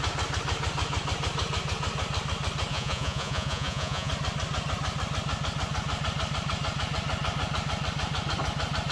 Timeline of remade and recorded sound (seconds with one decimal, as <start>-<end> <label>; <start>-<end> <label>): 0.0-2.7 recorded; 2.7-4.1 remade; 4.1-8.9 recorded